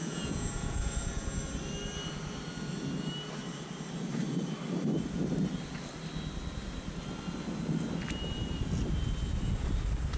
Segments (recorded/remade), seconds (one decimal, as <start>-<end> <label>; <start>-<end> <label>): 0.0-1.4 remade; 1.4-10.2 recorded